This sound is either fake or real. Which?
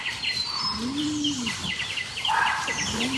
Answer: real